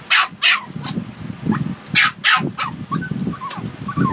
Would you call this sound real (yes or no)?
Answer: yes